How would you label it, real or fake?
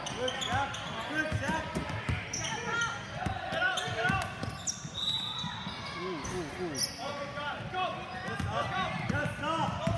real